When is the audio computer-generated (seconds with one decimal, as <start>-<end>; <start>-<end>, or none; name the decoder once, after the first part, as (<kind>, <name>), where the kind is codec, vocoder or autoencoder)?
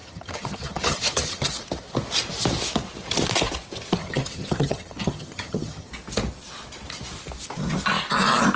0.0-1.5 (vocoder, HiFi-GAN); 4.0-5.9